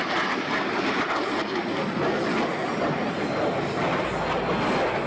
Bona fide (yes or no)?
yes